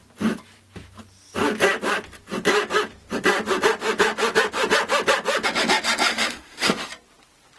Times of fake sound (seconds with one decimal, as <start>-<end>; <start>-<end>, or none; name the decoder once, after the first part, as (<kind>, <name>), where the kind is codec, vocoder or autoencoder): 6.1-6.9 (autoencoder, DAC-VAE)